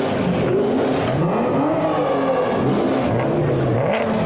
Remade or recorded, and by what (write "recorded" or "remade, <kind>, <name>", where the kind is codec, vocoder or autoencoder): recorded